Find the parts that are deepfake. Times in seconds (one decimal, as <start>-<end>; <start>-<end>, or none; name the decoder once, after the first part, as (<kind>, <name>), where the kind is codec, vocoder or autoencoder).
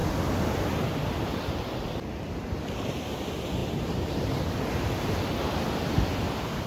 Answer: none